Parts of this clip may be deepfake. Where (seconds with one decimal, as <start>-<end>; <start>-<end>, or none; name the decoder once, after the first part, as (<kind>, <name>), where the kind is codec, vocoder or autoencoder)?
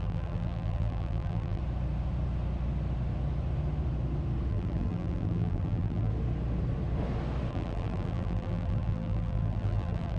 0.0-1.6 (vocoder, BigVGAN v2); 4.5-6.1; 7.5-10.2